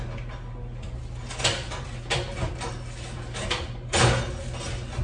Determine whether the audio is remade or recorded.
recorded